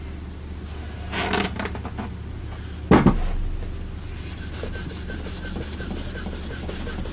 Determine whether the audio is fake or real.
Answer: real